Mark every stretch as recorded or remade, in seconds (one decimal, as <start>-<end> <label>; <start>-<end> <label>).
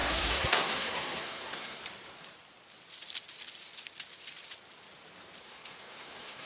0.0-1.8 remade; 1.8-5.4 recorded; 5.4-6.5 remade